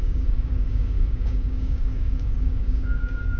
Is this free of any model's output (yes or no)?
no